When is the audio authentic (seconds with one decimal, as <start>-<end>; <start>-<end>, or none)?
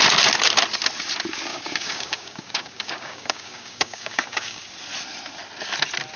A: 0.0-1.5; 4.6-6.2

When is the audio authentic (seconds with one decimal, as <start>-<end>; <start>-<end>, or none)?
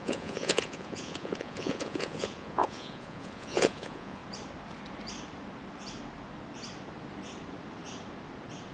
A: 4.2-8.7